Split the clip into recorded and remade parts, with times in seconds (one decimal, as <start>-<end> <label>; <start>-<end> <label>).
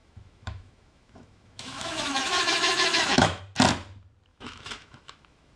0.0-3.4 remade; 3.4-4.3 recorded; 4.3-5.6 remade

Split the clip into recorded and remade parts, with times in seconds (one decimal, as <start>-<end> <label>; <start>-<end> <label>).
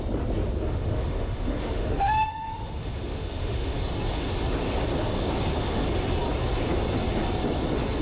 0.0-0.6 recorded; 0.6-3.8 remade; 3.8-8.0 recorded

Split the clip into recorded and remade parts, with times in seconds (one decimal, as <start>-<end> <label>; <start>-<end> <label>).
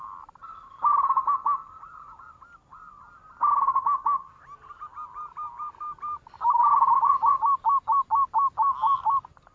0.0-9.5 recorded